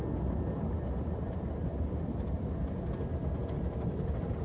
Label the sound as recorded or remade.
recorded